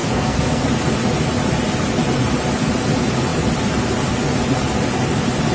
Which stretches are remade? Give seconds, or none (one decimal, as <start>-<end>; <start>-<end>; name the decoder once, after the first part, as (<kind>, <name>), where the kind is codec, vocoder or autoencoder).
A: 0.0-0.7 (codec, SNAC)